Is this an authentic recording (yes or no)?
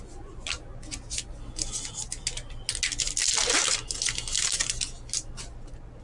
yes